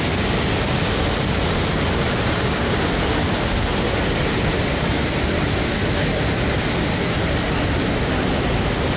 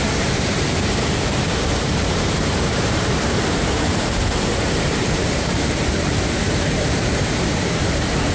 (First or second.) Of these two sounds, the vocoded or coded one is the second